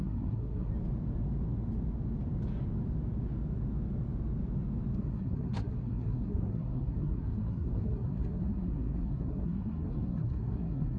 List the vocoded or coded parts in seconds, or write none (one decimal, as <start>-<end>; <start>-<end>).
0.0-0.7; 5.0-11.0